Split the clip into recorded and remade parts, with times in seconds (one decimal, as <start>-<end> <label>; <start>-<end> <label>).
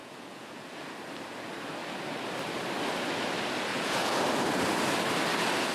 0.0-0.7 remade; 0.7-3.7 recorded; 3.7-4.3 remade; 4.3-5.7 recorded